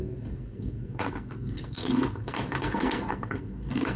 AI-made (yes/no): yes